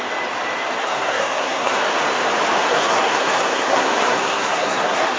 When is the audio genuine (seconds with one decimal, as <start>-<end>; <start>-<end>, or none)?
0.0-0.8; 1.8-2.6